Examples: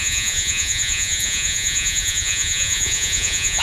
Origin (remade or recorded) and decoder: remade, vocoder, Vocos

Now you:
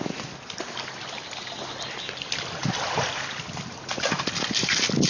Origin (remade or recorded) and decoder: recorded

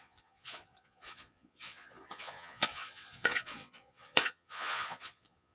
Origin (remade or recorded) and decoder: remade, vocoder, Vocos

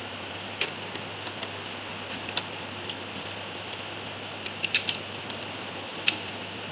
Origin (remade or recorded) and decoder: recorded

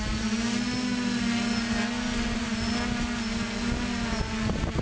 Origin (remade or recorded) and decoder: recorded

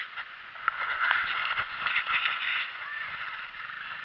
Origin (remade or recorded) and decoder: remade, vocoder, Vocos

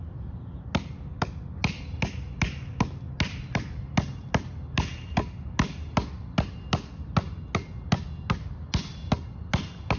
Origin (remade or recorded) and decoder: recorded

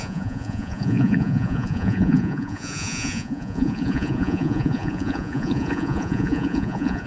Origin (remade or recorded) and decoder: remade, vocoder, Vocos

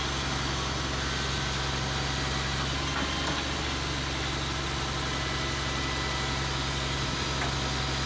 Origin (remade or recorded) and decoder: recorded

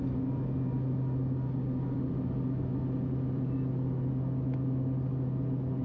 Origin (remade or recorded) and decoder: recorded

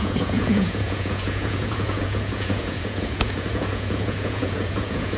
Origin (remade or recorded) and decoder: remade, vocoder, Vocos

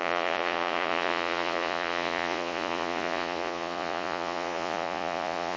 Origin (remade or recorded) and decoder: remade, vocoder, Vocos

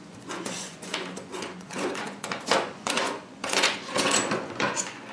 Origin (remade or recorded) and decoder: remade, vocoder, Vocos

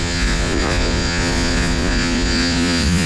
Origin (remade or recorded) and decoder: remade, vocoder, Vocos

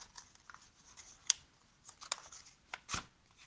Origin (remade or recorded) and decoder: recorded